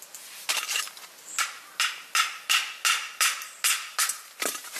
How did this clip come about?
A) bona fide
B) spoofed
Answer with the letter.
A